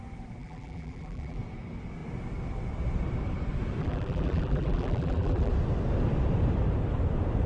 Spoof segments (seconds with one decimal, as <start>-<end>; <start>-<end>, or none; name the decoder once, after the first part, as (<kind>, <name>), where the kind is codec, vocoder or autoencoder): 0.4-1.4 (vocoder, BigVGAN v2); 3.8-5.5